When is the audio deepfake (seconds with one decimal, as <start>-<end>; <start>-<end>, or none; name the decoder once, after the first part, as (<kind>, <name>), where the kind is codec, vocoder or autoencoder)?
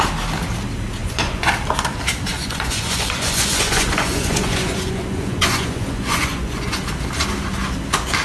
1.0-1.5 (vocoder, Vocos); 2.3-6.8